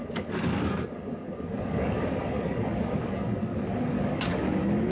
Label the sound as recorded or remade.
remade